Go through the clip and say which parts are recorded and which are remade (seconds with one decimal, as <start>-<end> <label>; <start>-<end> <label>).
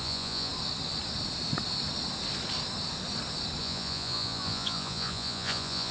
0.0-0.5 remade; 0.5-3.6 recorded; 3.6-5.9 remade